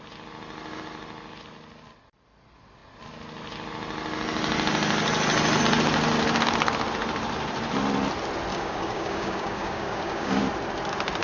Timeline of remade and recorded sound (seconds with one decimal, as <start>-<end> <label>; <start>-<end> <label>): 0.0-8.5 recorded; 8.5-10.4 remade; 10.4-11.2 recorded